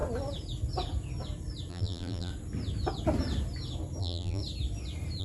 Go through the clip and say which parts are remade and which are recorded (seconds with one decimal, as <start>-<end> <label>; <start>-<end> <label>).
0.0-1.7 recorded; 1.7-2.3 remade; 2.3-4.0 recorded; 4.0-4.4 remade; 4.4-5.2 recorded